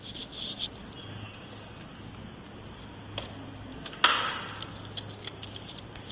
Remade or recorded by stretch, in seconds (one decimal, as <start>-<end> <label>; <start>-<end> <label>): 0.0-1.0 recorded; 1.0-2.0 remade; 2.0-3.7 recorded; 3.7-4.7 remade; 4.7-6.1 recorded